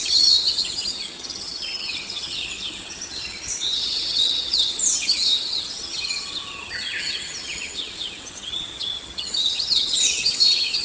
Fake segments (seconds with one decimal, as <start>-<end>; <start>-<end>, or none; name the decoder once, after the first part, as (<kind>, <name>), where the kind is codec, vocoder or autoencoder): 0.0-10.8 (vocoder, HiFi-GAN)